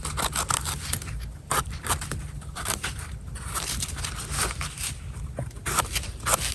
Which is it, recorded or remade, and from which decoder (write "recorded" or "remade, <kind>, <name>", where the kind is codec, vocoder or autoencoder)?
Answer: remade, vocoder, BigVGAN v2